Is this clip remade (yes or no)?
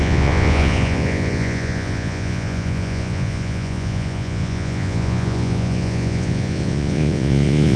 yes